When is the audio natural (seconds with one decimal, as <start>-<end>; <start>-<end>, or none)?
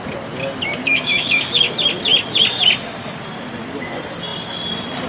0.0-0.8; 1.7-5.1